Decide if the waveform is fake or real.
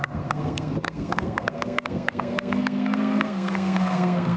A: fake